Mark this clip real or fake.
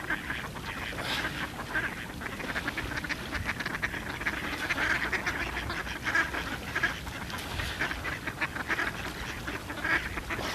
real